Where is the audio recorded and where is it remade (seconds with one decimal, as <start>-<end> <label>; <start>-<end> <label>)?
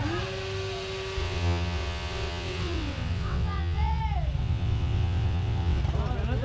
0.0-1.2 recorded; 1.2-4.0 remade; 4.0-4.4 recorded; 4.4-5.8 remade; 5.8-6.4 recorded